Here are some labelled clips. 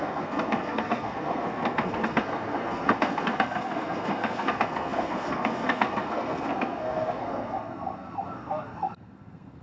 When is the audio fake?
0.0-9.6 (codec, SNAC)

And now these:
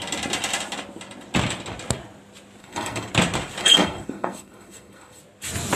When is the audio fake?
2.6-3.1 (codec, SNAC); 3.6-5.2

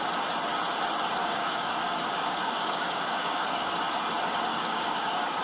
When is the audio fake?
1.2-3.7 (codec, DAC); 4.5-5.4

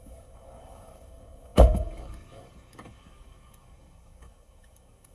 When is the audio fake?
0.0-5.1 (codec, DAC)